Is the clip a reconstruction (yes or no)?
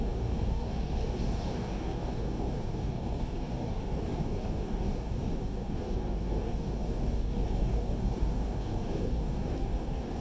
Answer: yes